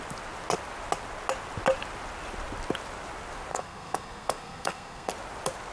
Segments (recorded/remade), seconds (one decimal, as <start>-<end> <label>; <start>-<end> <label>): 0.0-3.5 recorded; 3.5-5.1 remade; 5.1-5.7 recorded